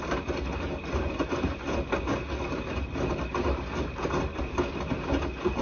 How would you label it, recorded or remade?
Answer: recorded